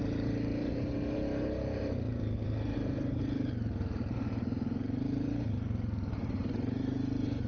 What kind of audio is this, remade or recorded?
remade